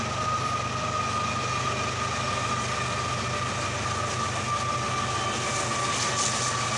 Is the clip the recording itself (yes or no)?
yes